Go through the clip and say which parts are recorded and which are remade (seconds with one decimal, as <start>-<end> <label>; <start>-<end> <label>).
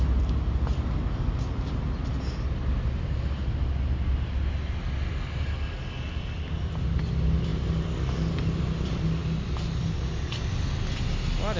0.0-11.6 recorded